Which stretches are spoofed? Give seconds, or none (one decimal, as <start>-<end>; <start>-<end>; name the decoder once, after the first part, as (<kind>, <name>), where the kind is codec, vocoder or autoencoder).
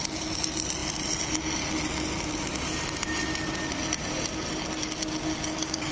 none